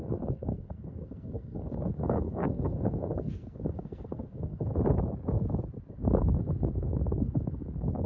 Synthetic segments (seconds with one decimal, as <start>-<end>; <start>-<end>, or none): 0.0-4.7; 5.9-8.1